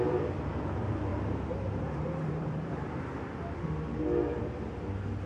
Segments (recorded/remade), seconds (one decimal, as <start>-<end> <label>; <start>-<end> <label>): 0.0-1.1 recorded; 1.1-3.0 remade; 3.0-5.3 recorded